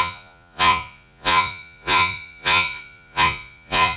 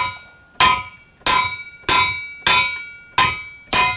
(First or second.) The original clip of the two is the second